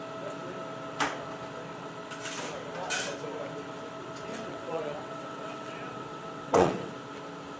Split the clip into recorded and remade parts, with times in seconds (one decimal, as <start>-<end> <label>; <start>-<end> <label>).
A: 0.0-4.3 recorded; 4.3-6.9 remade; 6.9-7.6 recorded